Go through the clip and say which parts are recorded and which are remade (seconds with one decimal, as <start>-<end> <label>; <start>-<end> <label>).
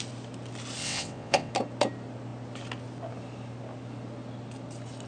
0.0-0.8 recorded; 0.8-1.5 remade; 1.5-5.1 recorded